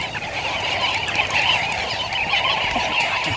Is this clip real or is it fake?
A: fake